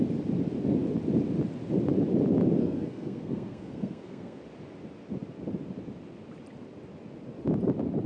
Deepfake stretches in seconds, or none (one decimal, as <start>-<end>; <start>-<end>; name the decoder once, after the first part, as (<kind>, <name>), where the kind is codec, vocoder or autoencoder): 2.6-4.4 (codec, SNAC)